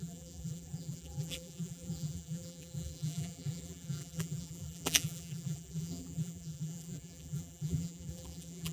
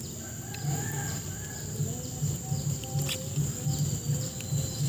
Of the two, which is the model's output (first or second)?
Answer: first